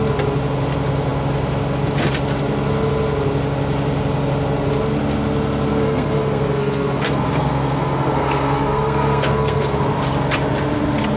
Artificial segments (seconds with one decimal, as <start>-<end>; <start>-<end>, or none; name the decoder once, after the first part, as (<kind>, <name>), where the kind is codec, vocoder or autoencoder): 5.7-9.8 (codec, SNAC)